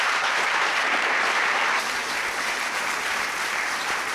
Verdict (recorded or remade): remade